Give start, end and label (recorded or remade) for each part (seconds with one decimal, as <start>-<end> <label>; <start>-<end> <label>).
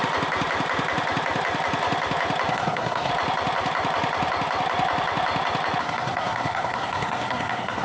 0.0-2.5 recorded; 2.5-3.1 remade; 3.1-5.8 recorded; 5.8-7.8 remade